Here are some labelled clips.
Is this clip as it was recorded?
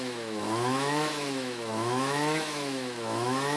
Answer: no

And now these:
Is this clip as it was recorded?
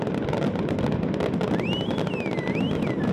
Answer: yes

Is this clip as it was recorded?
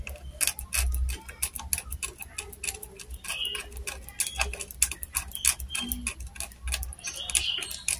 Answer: yes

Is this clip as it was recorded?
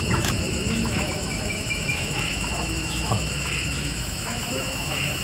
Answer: no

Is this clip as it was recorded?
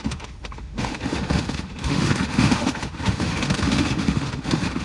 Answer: no